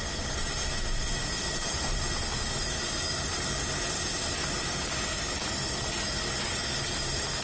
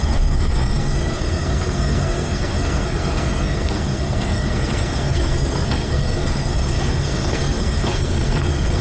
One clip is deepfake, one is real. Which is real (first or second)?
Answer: first